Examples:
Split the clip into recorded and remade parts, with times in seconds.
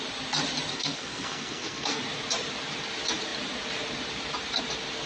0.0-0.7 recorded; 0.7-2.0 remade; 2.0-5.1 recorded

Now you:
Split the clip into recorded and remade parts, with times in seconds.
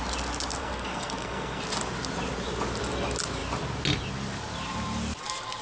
0.0-0.6 recorded; 0.6-1.6 remade; 1.6-5.6 recorded